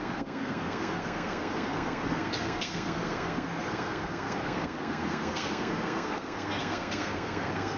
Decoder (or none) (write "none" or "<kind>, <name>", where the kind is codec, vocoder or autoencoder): codec, SNAC